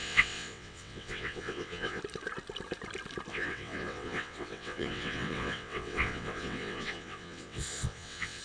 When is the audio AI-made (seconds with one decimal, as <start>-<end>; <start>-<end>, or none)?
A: 0.0-2.0; 3.3-8.4

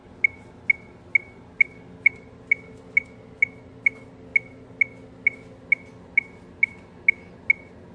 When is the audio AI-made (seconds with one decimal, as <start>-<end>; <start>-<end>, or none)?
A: none

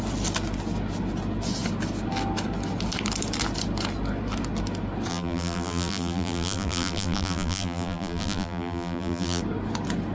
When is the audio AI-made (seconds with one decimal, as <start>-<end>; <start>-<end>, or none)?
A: 5.1-9.4

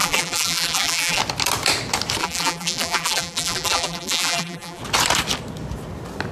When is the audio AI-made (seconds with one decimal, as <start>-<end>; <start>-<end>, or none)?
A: 0.0-1.2; 2.2-4.8

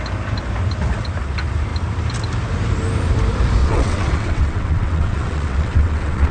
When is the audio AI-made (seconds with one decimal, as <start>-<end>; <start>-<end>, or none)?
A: 3.6-6.3